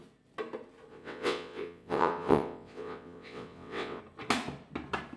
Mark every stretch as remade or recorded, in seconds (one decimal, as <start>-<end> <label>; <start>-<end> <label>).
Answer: 0.0-0.9 recorded; 0.9-4.0 remade; 4.0-5.2 recorded